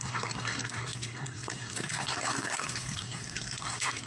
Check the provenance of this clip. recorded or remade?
remade